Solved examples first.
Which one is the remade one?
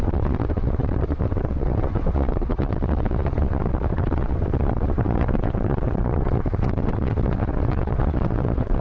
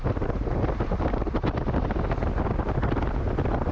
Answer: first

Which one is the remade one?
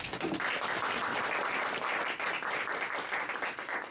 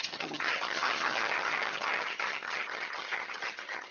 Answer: second